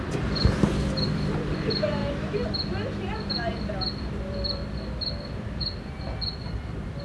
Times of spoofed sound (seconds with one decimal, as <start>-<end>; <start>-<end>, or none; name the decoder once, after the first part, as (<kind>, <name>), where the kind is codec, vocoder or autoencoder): 0.0-2.0 (vocoder, BigVGAN v2); 4.0-4.6; 5.4-7.0